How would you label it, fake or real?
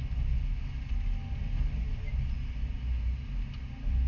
real